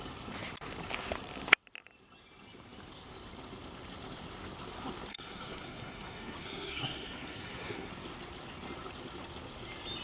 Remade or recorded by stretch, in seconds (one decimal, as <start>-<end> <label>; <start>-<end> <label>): 0.0-5.1 recorded; 5.1-7.9 remade; 7.9-10.0 recorded